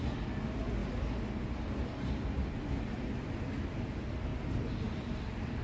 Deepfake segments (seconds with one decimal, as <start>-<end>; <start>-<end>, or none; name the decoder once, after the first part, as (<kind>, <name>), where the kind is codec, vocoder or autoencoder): none